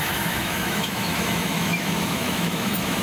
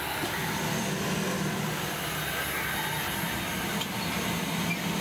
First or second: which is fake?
first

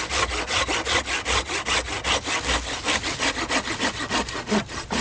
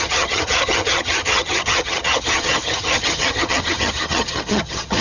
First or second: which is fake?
second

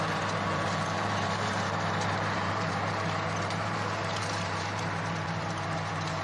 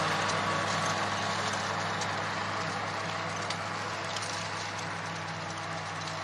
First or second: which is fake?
first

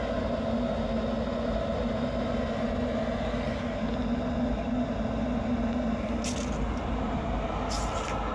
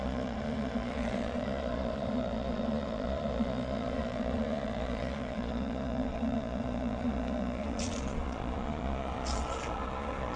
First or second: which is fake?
second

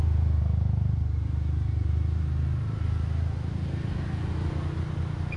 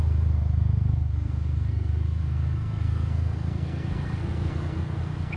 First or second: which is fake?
second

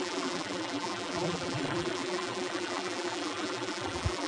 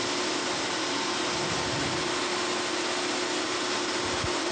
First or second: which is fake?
first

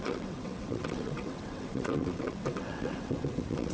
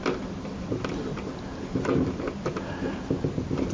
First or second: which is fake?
first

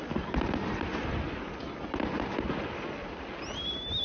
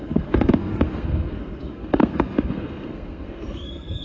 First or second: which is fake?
second